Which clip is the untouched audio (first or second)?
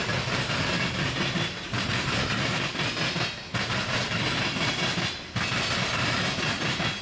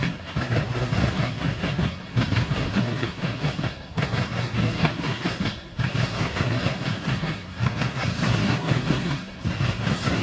first